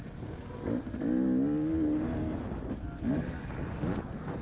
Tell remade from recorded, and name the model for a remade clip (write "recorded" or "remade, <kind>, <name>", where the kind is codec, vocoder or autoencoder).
recorded